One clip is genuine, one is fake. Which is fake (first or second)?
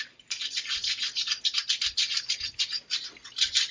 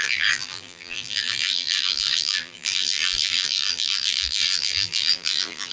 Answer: second